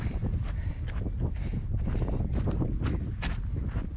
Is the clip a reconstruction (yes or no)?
no